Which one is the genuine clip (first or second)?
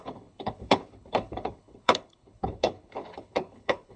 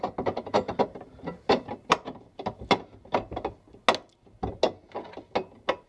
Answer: second